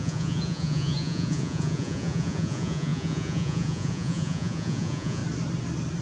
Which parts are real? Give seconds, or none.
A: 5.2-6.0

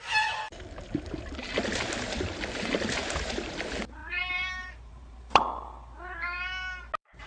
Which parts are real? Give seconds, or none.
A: 0.0-3.0; 3.5-4.0; 5.4-7.3

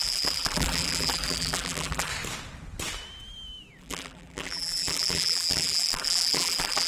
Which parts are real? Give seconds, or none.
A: 2.1-3.8

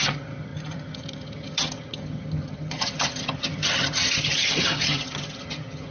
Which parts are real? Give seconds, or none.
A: none